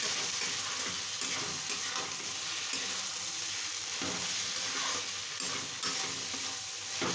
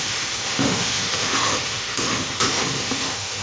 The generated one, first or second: second